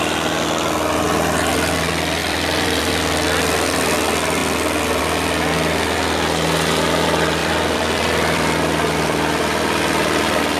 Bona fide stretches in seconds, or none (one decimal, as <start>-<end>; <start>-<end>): 0.0-2.2; 2.9-7.4